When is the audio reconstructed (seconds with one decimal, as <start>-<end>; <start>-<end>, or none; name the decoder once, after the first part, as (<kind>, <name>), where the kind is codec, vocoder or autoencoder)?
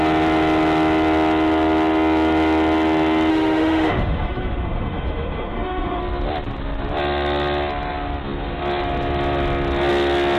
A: 3.3-6.0 (autoencoder, DAC-VAE)